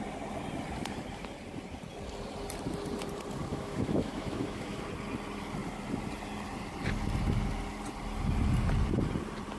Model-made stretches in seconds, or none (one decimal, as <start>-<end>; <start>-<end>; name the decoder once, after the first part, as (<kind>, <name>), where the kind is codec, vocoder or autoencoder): 3.5-4.8 (autoencoder, DAC-VAE)